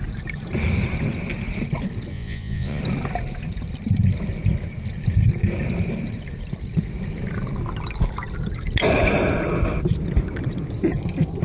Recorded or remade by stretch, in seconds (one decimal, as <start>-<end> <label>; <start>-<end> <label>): 0.0-2.1 recorded; 2.1-2.8 remade; 2.8-11.4 recorded